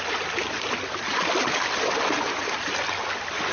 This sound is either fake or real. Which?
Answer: real